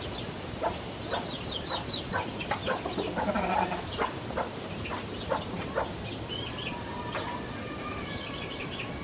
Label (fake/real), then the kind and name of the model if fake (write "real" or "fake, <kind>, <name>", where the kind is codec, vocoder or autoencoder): real